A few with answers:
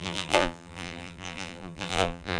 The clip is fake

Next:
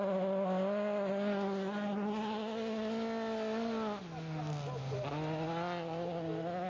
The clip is real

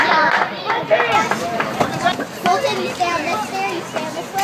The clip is real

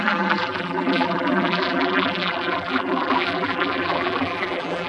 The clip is fake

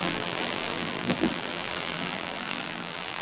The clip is fake